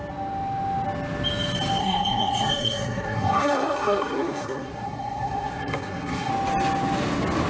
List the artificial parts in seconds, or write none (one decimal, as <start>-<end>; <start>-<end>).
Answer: 1.8-6.3